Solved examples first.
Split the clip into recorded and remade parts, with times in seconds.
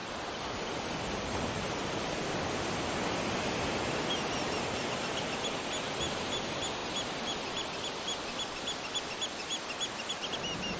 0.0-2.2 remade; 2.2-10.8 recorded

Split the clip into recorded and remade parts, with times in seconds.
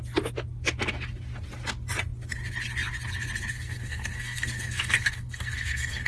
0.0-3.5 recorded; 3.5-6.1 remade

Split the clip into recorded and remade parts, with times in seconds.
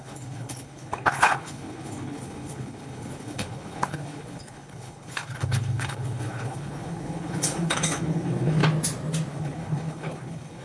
0.0-8.6 remade; 8.6-9.3 recorded; 9.3-10.6 remade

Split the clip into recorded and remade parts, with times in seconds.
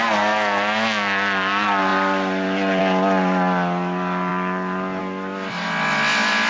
0.0-6.5 recorded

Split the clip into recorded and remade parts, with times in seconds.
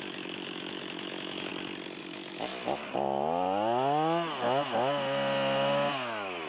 0.0-1.5 remade; 1.5-2.0 recorded; 2.0-2.5 remade; 2.5-6.5 recorded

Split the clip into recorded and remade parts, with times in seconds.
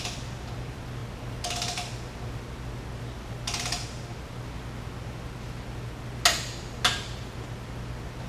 0.0-8.3 recorded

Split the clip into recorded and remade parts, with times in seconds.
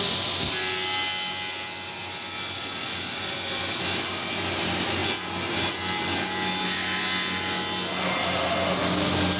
0.0-9.4 recorded